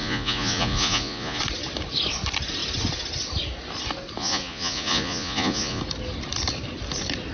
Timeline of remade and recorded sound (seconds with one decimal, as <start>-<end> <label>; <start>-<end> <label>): 0.0-1.4 remade; 1.4-4.2 recorded; 4.2-5.8 remade; 5.8-7.3 recorded